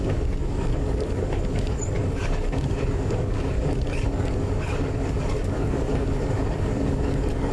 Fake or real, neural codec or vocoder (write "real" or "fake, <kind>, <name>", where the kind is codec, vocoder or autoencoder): fake, codec, DAC